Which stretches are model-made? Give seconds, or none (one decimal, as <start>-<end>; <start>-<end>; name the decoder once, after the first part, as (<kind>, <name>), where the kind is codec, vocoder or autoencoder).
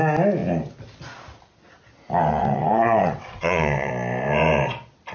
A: 2.3-3.9 (vocoder, WaveNeXt)